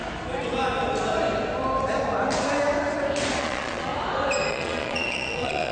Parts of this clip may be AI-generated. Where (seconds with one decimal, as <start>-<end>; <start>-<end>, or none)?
3.4-3.9; 4.5-5.7